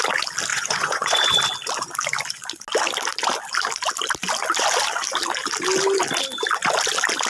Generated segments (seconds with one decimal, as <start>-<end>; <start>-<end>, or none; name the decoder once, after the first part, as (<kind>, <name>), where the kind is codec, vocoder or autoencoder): 0.5-1.4 (vocoder, Vocos)